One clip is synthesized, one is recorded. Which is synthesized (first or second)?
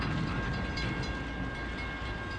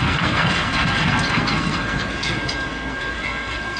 second